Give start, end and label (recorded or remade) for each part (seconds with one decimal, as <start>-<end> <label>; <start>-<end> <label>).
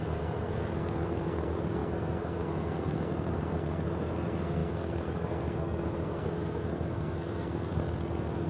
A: 0.0-8.5 remade